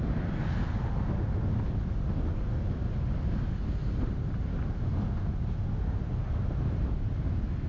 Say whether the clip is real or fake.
real